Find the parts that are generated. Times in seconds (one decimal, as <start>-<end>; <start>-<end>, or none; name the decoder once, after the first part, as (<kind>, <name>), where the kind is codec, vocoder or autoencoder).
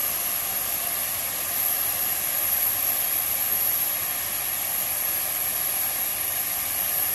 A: none